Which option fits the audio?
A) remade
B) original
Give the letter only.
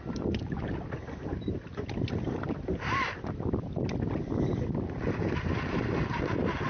B